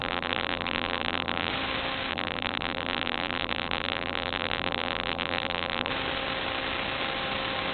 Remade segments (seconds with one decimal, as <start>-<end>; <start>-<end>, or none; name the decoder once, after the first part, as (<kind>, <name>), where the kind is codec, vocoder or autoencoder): 0.0-1.5 (vocoder, BigVGAN v2); 2.1-5.9